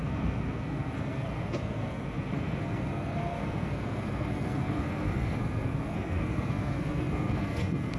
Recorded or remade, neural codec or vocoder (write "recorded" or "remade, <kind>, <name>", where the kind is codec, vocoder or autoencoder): remade, codec, SNAC